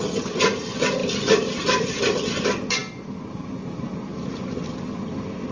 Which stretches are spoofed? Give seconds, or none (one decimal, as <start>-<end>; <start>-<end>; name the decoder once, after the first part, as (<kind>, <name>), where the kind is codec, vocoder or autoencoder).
none